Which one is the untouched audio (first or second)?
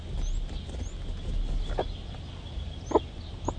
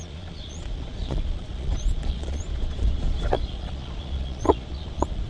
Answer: first